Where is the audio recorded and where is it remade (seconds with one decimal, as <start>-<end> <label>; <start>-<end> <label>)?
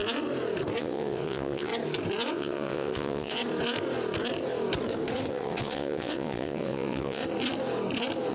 0.0-0.8 recorded; 0.8-1.7 remade; 1.7-2.3 recorded; 2.3-3.4 remade; 3.4-5.3 recorded; 5.3-7.2 remade; 7.2-8.3 recorded